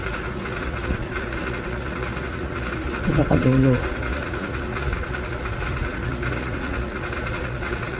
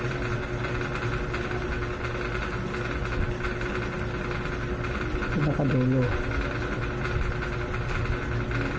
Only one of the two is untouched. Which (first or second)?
second